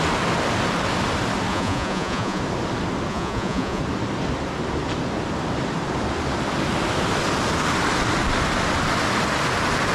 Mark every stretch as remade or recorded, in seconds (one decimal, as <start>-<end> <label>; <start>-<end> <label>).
0.0-1.5 recorded; 1.5-2.4 remade; 2.4-3.1 recorded; 3.1-3.8 remade; 3.8-9.9 recorded